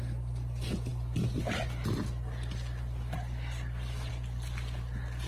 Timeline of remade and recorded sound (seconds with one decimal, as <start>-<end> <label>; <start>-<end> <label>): 0.0-5.3 recorded

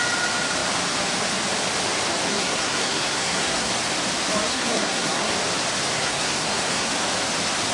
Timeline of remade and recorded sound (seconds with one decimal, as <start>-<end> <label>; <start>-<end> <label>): 0.0-2.3 recorded; 2.3-3.7 remade; 3.7-4.5 recorded; 4.5-5.3 remade; 5.3-5.9 recorded; 5.9-6.9 remade; 6.9-7.7 recorded